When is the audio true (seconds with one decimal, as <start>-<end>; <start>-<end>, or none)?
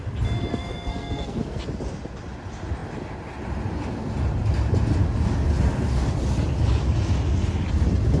0.0-0.5; 1.6-8.2